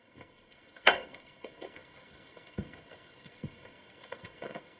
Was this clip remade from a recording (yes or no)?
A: yes